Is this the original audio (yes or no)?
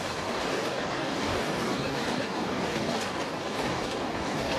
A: no